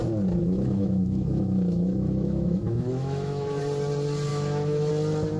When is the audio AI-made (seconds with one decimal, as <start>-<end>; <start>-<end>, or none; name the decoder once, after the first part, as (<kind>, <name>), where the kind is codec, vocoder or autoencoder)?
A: 0.4-3.6 (autoencoder, DAC-VAE); 4.3-4.9